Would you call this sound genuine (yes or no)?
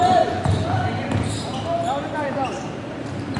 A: no